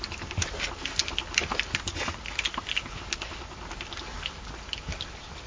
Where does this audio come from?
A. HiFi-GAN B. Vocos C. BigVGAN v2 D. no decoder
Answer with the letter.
D